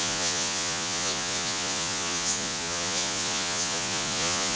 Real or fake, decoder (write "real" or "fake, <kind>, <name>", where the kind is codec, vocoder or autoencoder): fake, vocoder, Vocos